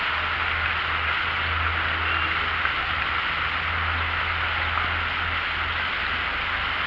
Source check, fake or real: real